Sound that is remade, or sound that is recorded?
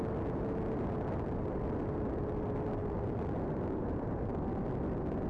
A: recorded